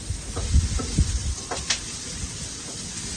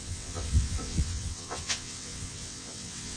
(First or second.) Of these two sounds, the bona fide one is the first